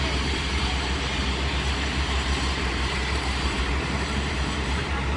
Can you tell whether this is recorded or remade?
remade